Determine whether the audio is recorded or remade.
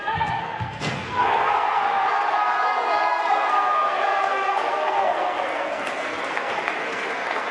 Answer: remade